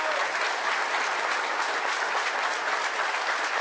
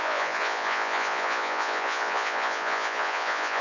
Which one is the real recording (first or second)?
first